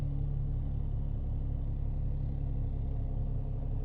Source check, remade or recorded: recorded